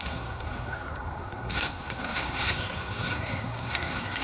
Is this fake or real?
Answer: fake